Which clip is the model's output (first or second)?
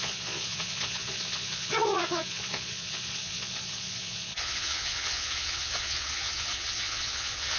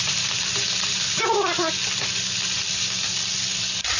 first